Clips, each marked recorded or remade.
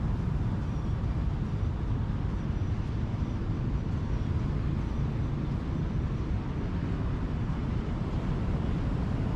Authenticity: recorded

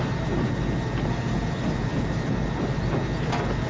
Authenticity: recorded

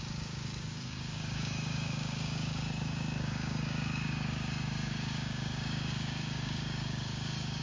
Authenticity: remade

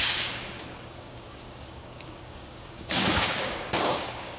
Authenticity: remade